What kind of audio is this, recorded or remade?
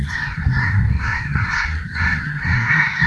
remade